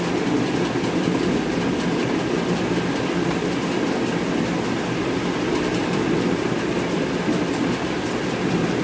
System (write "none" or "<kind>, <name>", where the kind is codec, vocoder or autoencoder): none